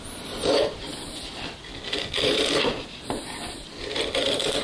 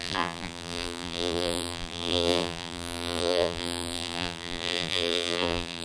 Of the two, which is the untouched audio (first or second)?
first